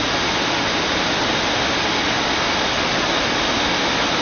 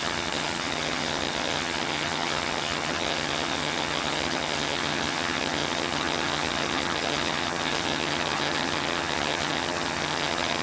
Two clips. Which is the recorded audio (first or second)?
first